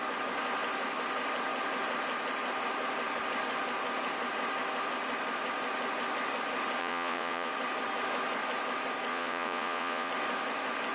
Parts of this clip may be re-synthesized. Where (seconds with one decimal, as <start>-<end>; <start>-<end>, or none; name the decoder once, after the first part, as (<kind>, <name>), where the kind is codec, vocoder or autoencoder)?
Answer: 6.8-7.5 (vocoder, Vocos); 9.1-10.1